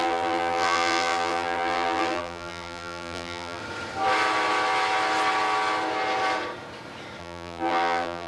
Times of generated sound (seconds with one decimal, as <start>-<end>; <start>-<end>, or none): 0.0-3.6; 7.2-8.3